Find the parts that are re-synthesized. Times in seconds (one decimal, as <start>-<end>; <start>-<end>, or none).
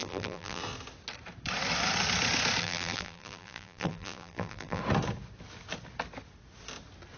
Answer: 0.0-0.6; 2.6-4.8